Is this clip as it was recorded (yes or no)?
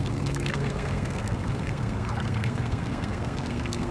no